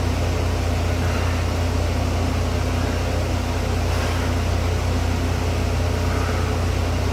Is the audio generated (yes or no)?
no